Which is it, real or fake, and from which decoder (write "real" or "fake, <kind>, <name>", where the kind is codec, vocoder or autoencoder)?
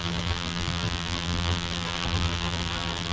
fake, vocoder, BigVGAN v2